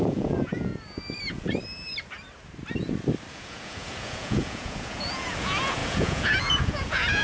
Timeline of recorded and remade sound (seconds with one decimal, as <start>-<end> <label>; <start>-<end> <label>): 0.0-0.7 remade; 0.7-3.3 recorded; 3.3-7.2 remade